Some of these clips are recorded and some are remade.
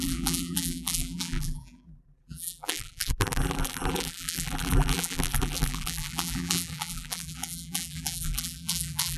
remade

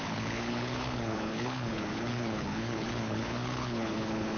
remade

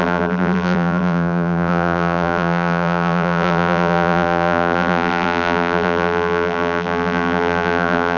remade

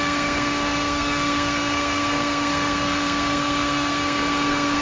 remade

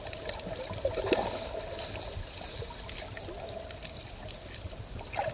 recorded